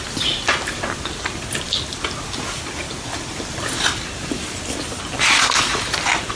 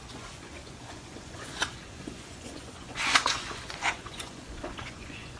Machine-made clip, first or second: second